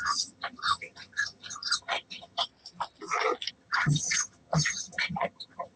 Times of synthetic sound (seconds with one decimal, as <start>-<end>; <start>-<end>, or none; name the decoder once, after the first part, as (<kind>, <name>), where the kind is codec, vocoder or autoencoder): 0.0-2.5 (vocoder, HiFi-GAN); 3.5-5.8